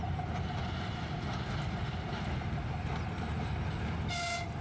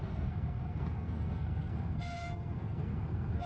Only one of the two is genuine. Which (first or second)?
first